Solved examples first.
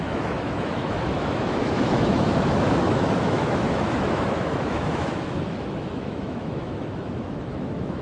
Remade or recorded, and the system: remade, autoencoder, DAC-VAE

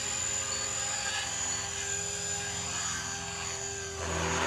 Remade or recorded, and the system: recorded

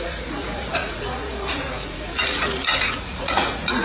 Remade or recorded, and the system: remade, vocoder, Vocos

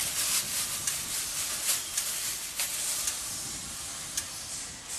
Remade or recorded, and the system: recorded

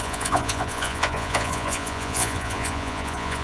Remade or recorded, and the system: remade, vocoder, Vocos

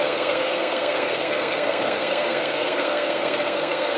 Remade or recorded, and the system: remade, codec, SNAC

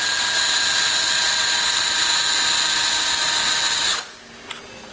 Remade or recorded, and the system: recorded